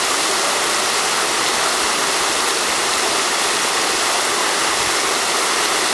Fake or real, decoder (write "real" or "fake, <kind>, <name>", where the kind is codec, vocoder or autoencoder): real